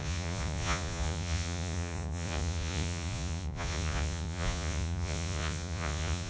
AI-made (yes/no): yes